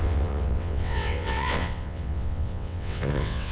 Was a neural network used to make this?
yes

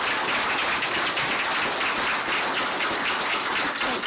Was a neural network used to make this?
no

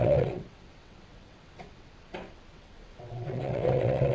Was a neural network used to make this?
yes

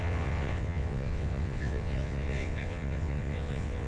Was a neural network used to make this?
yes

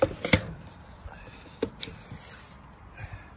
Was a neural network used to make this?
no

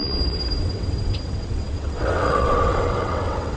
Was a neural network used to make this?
yes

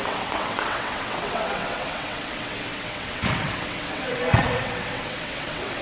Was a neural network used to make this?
yes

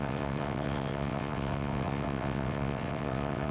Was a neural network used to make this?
yes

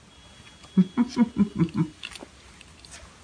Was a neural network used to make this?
no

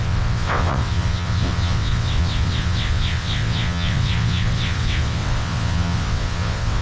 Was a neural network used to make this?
yes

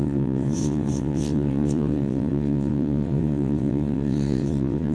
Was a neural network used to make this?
yes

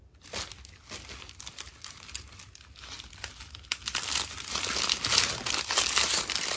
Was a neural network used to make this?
no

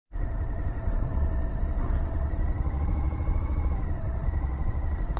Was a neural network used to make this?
yes